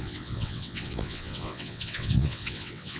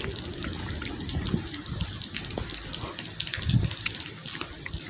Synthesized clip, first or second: first